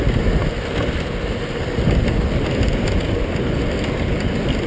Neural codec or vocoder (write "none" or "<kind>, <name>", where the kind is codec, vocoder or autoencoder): none